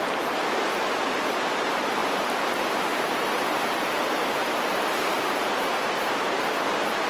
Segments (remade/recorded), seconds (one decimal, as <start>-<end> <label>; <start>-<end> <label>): 0.0-7.1 remade